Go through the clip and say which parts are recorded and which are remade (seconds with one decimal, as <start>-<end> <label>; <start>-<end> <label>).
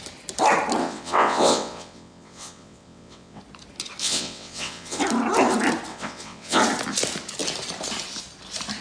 0.0-0.8 recorded; 0.8-3.4 remade; 3.4-4.0 recorded; 4.0-5.0 remade; 5.0-5.9 recorded; 5.9-6.6 remade; 6.6-8.8 recorded